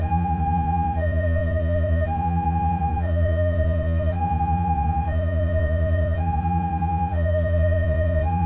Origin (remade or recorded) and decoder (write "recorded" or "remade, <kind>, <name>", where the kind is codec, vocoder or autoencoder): remade, vocoder, Vocos